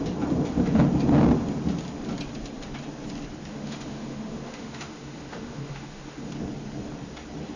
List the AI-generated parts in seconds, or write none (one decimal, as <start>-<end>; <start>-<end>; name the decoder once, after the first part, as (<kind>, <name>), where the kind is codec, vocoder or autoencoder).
3.5-6.3 (autoencoder, DAC-VAE)